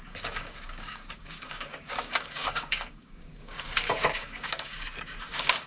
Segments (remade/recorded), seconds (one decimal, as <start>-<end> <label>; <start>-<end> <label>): 0.0-5.7 remade